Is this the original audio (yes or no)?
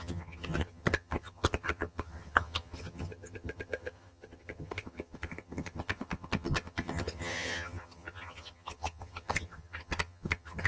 no